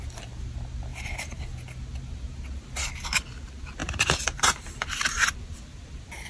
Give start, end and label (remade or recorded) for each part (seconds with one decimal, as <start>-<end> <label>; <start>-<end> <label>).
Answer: 0.0-3.8 recorded; 3.8-6.3 remade